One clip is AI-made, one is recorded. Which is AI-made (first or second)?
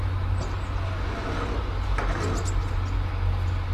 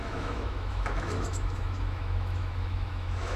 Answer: second